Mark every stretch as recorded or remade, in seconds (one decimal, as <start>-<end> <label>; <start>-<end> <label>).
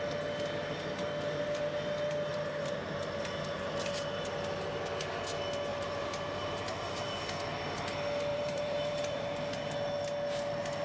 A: 0.0-2.3 recorded; 2.3-3.0 remade; 3.0-5.7 recorded; 5.7-7.2 remade; 7.2-8.3 recorded; 8.3-9.3 remade; 9.3-10.8 recorded